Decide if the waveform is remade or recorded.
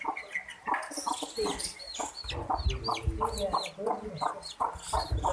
recorded